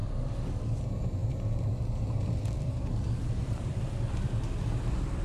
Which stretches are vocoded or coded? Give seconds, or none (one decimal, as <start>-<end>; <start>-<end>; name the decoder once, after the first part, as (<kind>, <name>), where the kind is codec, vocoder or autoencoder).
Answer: 0.0-0.6 (vocoder, BigVGAN v2); 1.2-4.3